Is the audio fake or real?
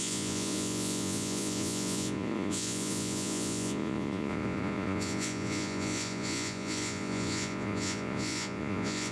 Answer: fake